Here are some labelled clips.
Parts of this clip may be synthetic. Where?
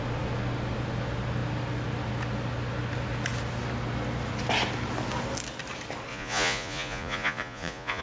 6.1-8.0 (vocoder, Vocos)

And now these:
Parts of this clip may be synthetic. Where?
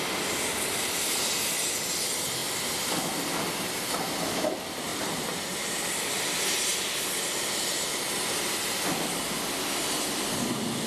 4.9-5.6 (vocoder, BigVGAN v2)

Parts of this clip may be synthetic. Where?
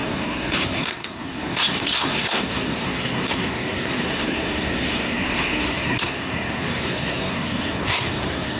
0.0-8.6 (codec, SNAC)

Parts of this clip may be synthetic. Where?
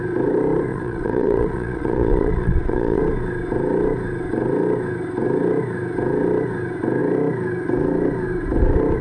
0.7-3.0 (vocoder, Vocos)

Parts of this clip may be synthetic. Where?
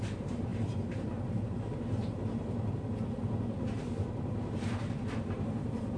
0.0-6.0 (vocoder, BigVGAN v2)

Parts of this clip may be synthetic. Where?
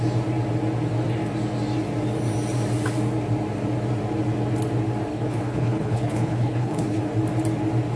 5.1-7.0 (codec, HILCodec)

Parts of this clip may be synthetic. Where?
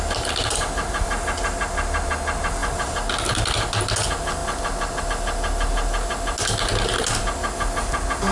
none